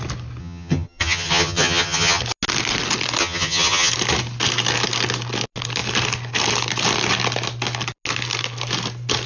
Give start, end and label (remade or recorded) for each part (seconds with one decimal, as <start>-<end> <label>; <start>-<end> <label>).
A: 0.0-0.4 recorded; 0.4-2.2 remade; 2.2-3.2 recorded; 3.2-3.9 remade; 3.9-9.3 recorded